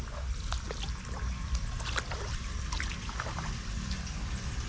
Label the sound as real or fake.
real